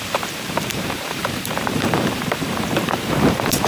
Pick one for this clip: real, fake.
fake